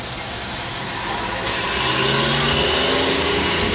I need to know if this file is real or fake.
real